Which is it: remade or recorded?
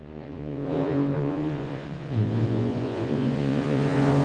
remade